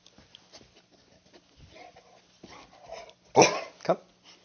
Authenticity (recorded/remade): recorded